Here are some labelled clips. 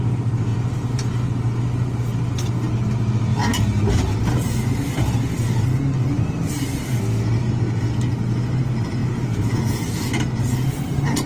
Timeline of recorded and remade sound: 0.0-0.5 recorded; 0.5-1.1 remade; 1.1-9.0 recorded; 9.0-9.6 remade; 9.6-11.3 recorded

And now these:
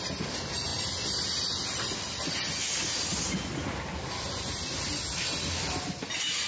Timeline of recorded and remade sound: 0.0-6.5 recorded